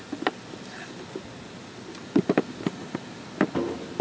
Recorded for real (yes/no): yes